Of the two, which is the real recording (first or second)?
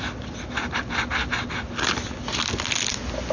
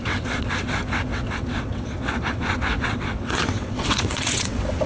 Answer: first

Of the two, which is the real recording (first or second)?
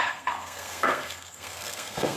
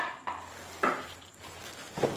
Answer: second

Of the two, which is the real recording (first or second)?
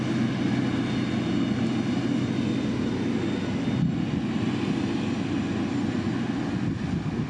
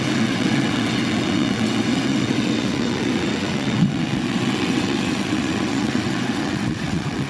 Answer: first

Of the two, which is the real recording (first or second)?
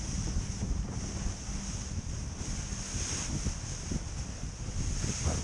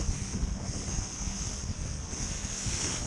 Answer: first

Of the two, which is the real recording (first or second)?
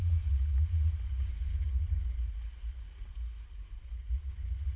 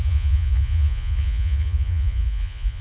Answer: first